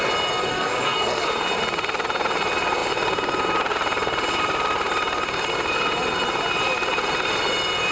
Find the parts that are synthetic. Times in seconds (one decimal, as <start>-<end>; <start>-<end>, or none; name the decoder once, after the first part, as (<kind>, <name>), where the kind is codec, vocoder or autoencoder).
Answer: 0.5-1.3 (codec, SNAC)